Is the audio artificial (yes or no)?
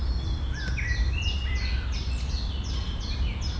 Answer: no